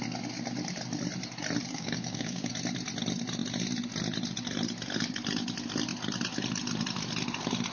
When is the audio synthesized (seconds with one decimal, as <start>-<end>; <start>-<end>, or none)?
1.6-2.5